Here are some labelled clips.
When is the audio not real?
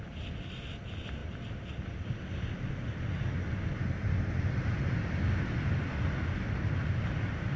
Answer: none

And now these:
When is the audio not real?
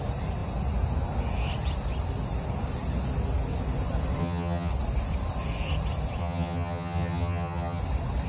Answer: 4.2-4.7; 6.2-7.8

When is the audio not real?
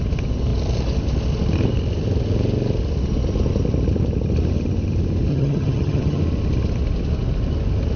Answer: 5.3-6.2